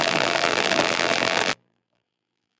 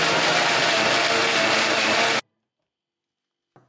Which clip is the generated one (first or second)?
first